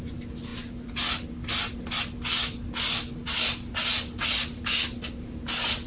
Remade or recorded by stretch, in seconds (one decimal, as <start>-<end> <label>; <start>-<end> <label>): 0.0-5.9 recorded